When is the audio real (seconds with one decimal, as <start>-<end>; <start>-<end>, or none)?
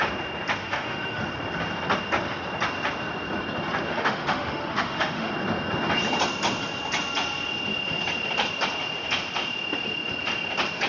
0.0-0.6; 1.2-3.9; 5.3-10.9